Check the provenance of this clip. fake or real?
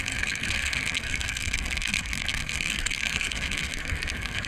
fake